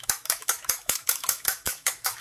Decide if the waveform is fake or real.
fake